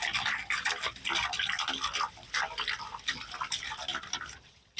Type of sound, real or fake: real